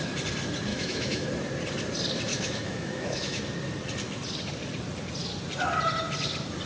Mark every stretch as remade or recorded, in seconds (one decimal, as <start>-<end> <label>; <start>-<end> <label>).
0.0-0.7 recorded; 0.7-1.3 remade; 1.3-2.3 recorded; 2.3-3.4 remade; 3.4-6.7 recorded